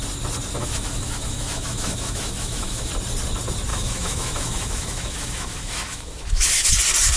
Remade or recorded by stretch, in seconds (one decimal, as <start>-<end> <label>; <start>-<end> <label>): 0.0-0.6 recorded; 0.6-2.9 remade; 2.9-3.7 recorded; 3.7-6.7 remade; 6.7-7.2 recorded